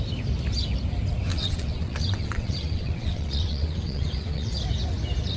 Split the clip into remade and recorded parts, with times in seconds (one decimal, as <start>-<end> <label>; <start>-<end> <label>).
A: 0.0-1.3 recorded; 1.3-4.5 remade; 4.5-5.4 recorded